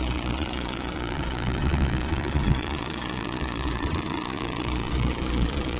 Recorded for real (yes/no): no